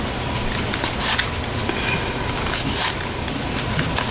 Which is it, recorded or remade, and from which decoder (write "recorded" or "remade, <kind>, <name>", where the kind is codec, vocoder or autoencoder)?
recorded